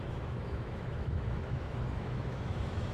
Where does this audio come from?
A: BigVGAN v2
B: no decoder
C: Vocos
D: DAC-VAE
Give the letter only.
D